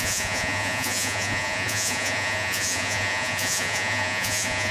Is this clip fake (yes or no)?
yes